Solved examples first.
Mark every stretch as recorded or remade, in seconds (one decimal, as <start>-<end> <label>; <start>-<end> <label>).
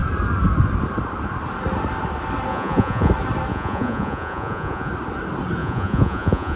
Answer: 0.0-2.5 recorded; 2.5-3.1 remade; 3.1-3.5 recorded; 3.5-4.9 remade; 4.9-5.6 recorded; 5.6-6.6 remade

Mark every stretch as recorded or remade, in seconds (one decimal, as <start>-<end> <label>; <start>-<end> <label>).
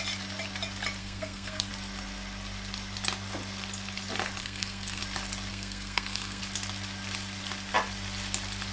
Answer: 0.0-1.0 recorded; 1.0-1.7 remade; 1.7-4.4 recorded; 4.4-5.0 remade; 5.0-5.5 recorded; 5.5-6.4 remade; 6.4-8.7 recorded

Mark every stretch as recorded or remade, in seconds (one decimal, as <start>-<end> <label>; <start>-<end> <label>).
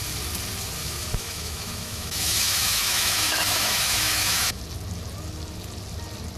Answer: 0.0-0.8 recorded; 0.8-4.6 remade; 4.6-6.4 recorded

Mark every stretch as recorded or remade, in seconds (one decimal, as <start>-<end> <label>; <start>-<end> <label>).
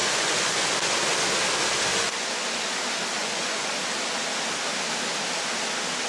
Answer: 0.0-0.9 remade; 0.9-1.9 recorded; 1.9-2.4 remade; 2.4-3.2 recorded; 3.2-3.7 remade; 3.7-6.1 recorded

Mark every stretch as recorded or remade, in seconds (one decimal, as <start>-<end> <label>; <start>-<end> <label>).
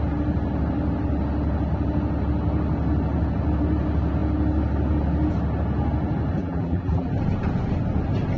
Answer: 0.0-6.4 recorded; 6.4-7.1 remade; 7.1-8.4 recorded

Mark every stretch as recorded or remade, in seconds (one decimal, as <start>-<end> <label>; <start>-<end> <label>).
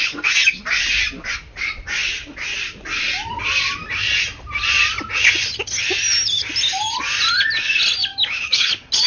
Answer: 0.0-8.1 recorded; 8.1-8.7 remade; 8.7-9.1 recorded